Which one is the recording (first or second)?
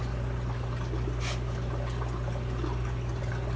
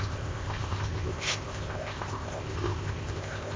first